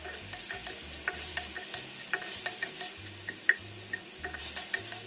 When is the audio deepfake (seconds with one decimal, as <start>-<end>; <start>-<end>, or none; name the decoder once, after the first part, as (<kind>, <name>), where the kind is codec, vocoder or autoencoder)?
none